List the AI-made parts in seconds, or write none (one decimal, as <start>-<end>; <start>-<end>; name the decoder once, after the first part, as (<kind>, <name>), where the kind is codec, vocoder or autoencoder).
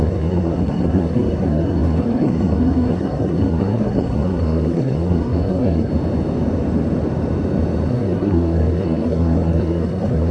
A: 0.0-5.9 (codec, SNAC); 7.9-10.3